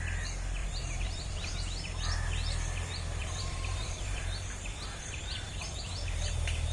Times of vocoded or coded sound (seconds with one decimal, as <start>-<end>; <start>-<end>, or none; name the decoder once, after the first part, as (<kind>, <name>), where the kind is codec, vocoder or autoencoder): 0.6-1.5 (vocoder, BigVGAN v2); 3.2-5.6